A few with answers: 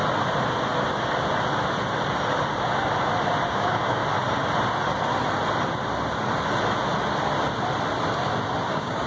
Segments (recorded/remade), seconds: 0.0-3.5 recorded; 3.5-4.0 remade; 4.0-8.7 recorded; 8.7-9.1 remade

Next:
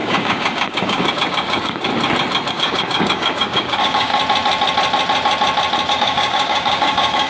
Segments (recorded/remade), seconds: 0.0-1.9 remade; 1.9-2.5 recorded; 2.5-4.1 remade; 4.1-5.9 recorded; 5.9-7.3 remade

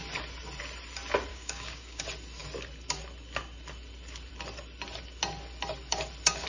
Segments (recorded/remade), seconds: 0.0-1.3 recorded; 1.3-2.0 remade; 2.0-6.5 recorded

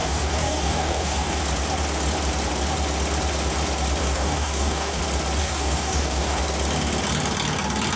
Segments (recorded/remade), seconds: 0.0-1.4 remade; 1.4-4.0 recorded; 4.0-5.0 remade; 5.0-5.4 recorded; 5.4-6.4 remade; 6.4-8.0 recorded

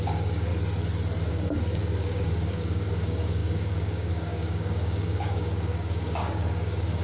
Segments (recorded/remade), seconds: 0.0-0.5 remade; 0.5-1.3 recorded; 1.3-7.0 remade

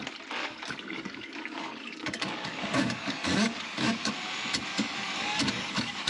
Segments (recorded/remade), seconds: 0.0-0.4 recorded; 0.4-4.1 remade; 4.1-4.7 recorded; 4.7-6.1 remade